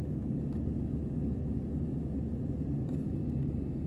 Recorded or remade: recorded